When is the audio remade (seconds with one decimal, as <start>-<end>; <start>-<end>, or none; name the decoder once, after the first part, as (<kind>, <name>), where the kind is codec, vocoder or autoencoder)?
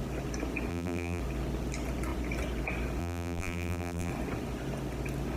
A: 0.7-1.2 (vocoder, BigVGAN v2); 3.0-4.1